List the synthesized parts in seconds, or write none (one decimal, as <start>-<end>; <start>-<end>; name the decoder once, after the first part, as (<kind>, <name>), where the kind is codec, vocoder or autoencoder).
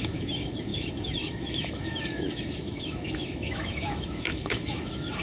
0.0-5.2 (autoencoder, DAC-VAE)